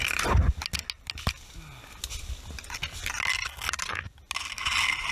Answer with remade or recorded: recorded